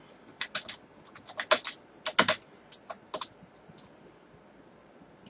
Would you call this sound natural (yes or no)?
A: yes